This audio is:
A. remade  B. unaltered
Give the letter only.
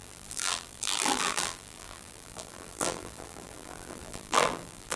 A